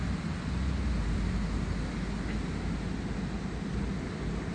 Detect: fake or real real